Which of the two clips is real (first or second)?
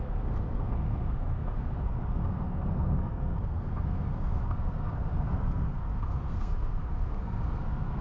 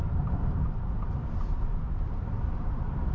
second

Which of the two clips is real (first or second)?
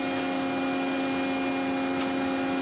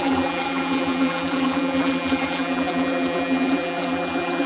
first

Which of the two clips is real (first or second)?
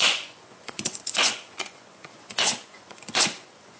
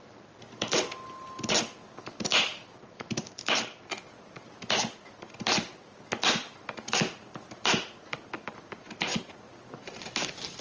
second